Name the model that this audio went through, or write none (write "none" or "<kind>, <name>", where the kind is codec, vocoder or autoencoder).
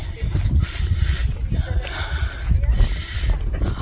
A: none